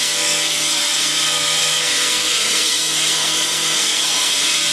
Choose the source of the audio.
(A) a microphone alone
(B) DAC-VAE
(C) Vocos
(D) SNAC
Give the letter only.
D